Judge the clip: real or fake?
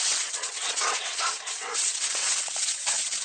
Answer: fake